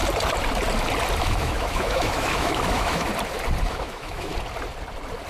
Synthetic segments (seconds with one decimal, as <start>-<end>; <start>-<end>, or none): 1.2-3.1; 3.7-4.3